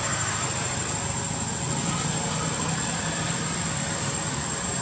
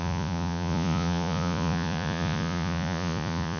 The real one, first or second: first